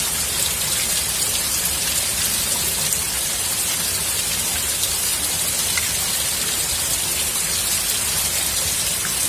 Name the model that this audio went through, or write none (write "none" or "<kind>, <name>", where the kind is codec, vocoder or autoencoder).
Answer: none